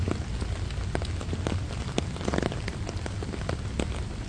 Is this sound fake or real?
real